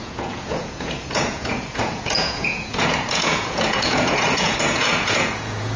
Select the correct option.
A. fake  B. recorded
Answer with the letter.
A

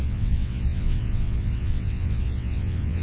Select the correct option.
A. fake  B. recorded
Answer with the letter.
A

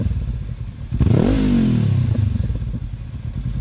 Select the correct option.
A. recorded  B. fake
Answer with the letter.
A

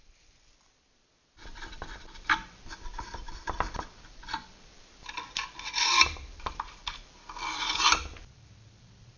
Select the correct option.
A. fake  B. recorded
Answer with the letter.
A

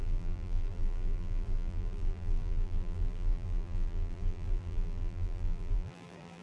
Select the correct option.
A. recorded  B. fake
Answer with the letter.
B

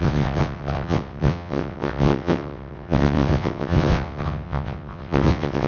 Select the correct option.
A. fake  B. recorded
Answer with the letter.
A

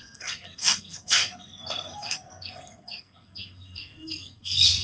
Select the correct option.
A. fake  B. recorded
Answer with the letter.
A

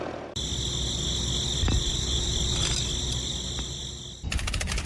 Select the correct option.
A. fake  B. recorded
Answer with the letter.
B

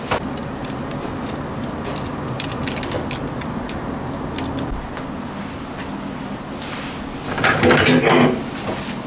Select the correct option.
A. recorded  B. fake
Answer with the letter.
A